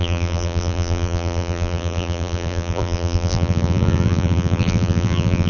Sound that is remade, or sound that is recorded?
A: remade